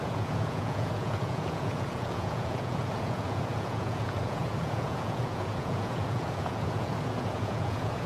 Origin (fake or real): fake